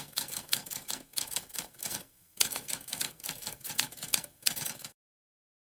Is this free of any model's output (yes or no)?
no